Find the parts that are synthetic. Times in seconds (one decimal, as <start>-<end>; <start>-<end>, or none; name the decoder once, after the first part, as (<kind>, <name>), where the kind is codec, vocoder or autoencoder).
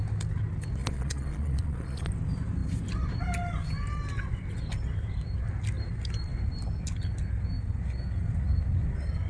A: 0.8-2.1 (vocoder, Vocos)